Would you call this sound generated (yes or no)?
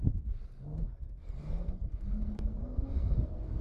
yes